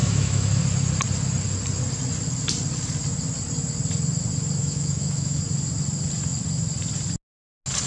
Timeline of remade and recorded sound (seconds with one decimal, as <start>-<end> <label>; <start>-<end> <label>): 0.0-0.6 remade; 0.6-4.6 recorded; 4.6-5.4 remade; 5.4-7.9 recorded